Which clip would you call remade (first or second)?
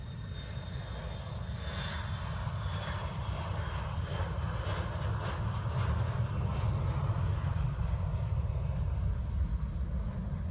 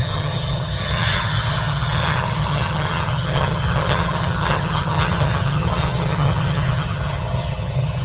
second